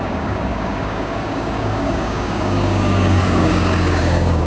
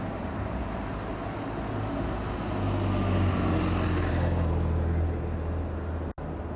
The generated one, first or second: first